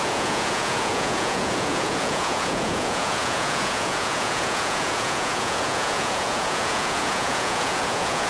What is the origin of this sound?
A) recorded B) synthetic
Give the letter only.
B